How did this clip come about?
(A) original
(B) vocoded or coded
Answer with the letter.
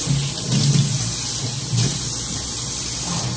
A